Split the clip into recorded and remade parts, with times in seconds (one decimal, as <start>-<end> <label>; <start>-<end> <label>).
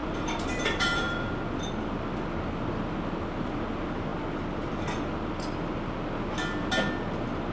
0.0-1.3 remade; 1.3-7.5 recorded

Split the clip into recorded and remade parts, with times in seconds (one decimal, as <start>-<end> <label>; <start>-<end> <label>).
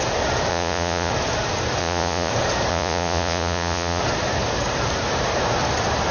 0.0-0.5 recorded; 0.5-1.1 remade; 1.1-1.8 recorded; 1.8-2.3 remade; 2.3-2.7 recorded; 2.7-4.0 remade; 4.0-6.1 recorded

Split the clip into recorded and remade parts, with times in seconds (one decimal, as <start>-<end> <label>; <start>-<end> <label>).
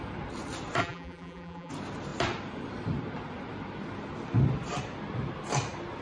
0.0-0.8 recorded; 0.8-1.7 remade; 1.7-6.0 recorded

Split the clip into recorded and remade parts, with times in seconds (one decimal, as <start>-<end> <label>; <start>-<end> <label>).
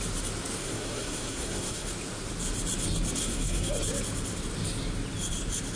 0.0-0.6 recorded; 0.6-1.9 remade; 1.9-3.2 recorded; 3.2-3.7 remade; 3.7-5.8 recorded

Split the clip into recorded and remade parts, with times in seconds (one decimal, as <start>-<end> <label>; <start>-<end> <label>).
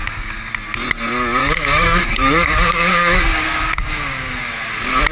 0.0-0.5 remade; 0.5-1.4 recorded; 1.4-4.5 remade; 4.5-5.1 recorded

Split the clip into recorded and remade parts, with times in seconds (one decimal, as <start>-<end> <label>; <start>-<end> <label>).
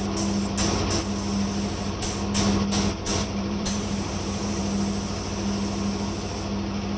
0.0-3.1 recorded; 3.1-4.6 remade; 4.6-7.0 recorded